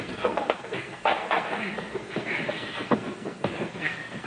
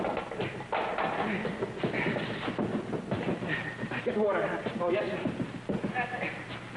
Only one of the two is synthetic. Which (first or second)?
first